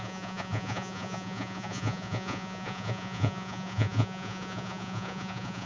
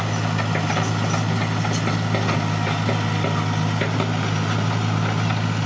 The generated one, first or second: first